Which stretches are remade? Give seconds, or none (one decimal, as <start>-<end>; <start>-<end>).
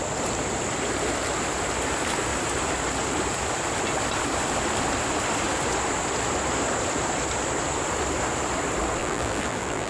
9.0-9.9